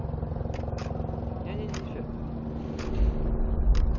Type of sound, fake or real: real